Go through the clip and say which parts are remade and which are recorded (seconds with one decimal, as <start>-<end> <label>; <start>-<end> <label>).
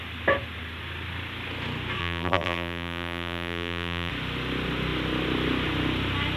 0.0-2.0 recorded; 2.0-4.1 remade; 4.1-6.4 recorded